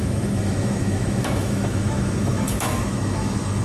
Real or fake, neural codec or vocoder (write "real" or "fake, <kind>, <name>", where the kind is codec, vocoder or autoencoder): fake, autoencoder, DAC-VAE